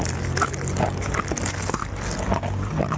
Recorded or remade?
recorded